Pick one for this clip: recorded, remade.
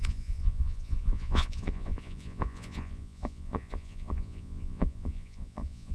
remade